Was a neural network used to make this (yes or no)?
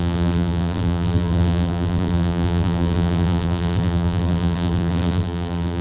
yes